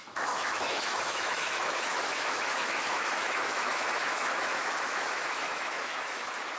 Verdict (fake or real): fake